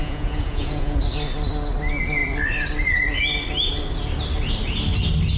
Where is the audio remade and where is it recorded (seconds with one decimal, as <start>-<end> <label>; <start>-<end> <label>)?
0.0-1.0 remade; 1.0-5.4 recorded